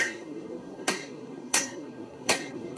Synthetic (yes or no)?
yes